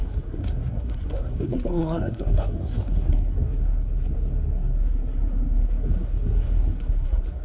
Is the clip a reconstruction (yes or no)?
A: yes